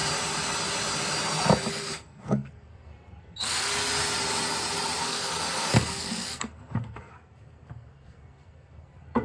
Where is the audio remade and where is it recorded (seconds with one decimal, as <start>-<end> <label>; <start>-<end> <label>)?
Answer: 0.0-1.7 recorded; 1.7-3.7 remade; 3.7-5.0 recorded; 5.0-9.2 remade